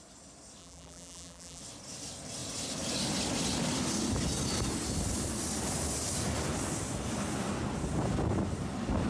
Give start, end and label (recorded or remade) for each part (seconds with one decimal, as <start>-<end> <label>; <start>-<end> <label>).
0.0-0.6 recorded; 0.6-1.6 remade; 1.6-9.1 recorded